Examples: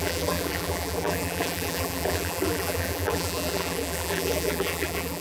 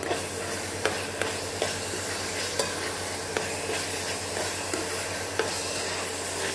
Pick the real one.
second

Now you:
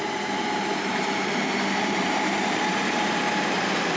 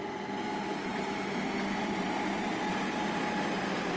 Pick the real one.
second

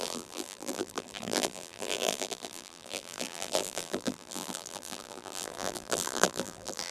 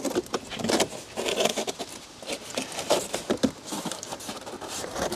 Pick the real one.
second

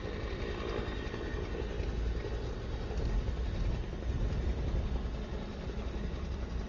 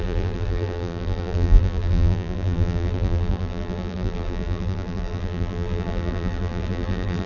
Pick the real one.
first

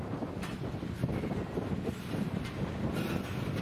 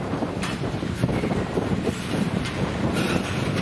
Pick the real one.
first